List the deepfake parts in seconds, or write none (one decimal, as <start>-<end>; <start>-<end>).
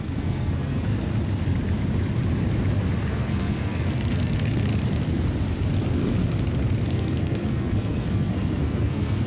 0.0-0.9; 3.1-4.7; 6.9-9.3